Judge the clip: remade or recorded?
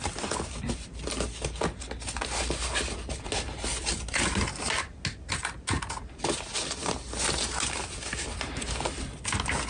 recorded